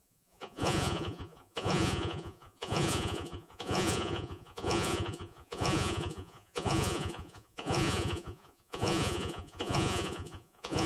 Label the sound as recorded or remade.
remade